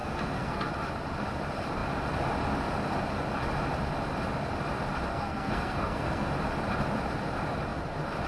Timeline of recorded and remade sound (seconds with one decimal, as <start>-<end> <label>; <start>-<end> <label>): 0.0-0.7 remade; 0.7-5.1 recorded; 5.1-6.3 remade; 6.3-8.3 recorded